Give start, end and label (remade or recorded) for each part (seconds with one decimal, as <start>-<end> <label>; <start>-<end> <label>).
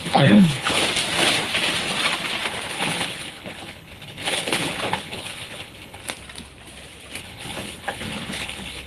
0.0-0.8 remade; 0.8-2.7 recorded; 2.7-6.0 remade; 6.0-7.2 recorded; 7.2-8.9 remade